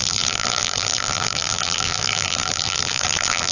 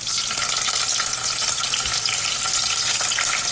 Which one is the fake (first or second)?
first